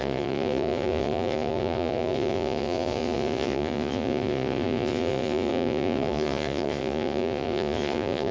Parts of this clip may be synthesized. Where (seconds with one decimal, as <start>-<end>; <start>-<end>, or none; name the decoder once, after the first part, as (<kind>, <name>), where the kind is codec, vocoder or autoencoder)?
0.0-8.3 (vocoder, Vocos)